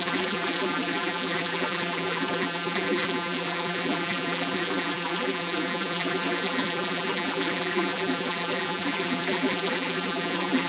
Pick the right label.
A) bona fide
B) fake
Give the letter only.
B